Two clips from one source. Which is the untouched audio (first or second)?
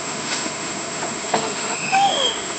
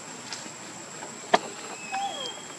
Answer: second